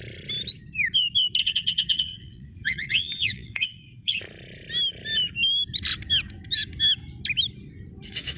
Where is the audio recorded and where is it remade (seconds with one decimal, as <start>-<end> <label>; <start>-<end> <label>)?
0.0-1.4 recorded; 1.4-4.2 remade; 4.2-8.4 recorded